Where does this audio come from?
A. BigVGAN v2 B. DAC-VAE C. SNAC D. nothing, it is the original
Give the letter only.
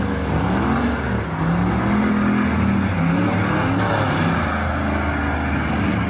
D